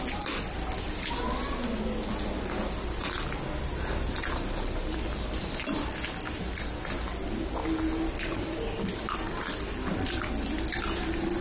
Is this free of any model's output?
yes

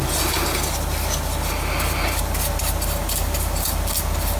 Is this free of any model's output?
yes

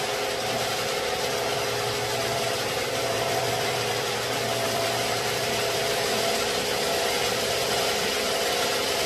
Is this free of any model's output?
no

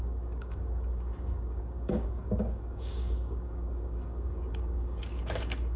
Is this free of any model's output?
no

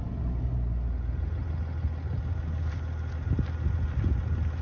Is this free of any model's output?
yes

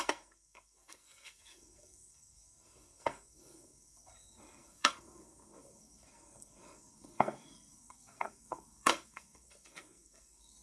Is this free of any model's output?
no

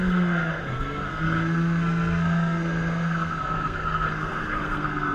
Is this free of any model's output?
no